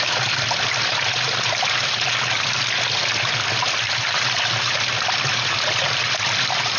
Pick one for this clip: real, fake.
real